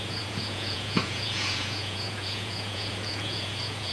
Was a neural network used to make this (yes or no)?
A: yes